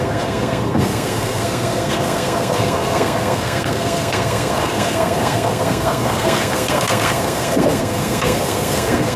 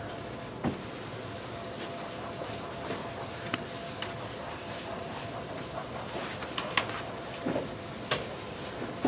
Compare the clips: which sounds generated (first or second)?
first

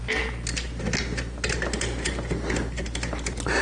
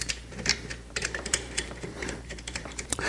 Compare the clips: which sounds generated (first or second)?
second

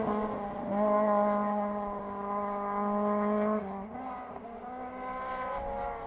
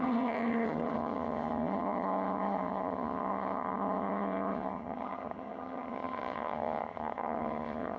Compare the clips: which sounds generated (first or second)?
second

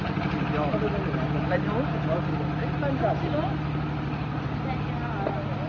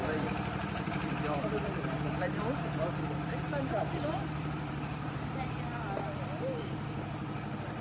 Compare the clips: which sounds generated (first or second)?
second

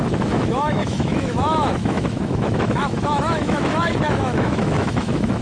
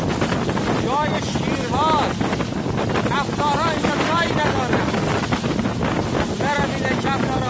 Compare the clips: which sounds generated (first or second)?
first